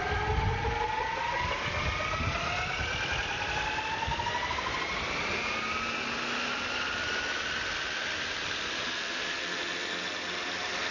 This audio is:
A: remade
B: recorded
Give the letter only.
B